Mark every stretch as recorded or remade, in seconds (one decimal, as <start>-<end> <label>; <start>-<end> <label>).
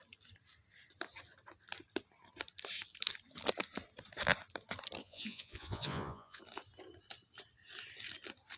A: 0.0-5.0 recorded; 5.0-6.4 remade; 6.4-8.6 recorded